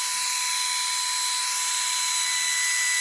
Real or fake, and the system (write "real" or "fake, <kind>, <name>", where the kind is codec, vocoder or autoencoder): real